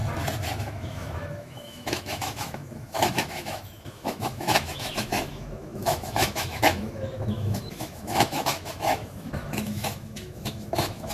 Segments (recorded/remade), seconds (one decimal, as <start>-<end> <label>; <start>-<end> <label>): 0.0-0.6 recorded; 0.6-11.1 remade